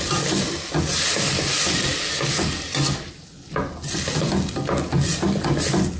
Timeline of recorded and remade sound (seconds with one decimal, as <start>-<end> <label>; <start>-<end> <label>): 0.0-6.0 recorded